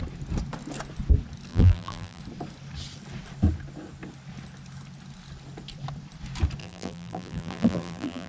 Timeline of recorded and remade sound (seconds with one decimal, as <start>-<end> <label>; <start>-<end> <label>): 0.0-1.5 recorded; 1.5-2.2 remade; 2.2-6.6 recorded; 6.6-8.3 remade